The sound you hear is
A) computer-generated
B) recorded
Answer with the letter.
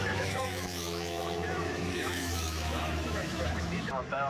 A